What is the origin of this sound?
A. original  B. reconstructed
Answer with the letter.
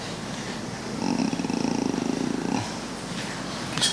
A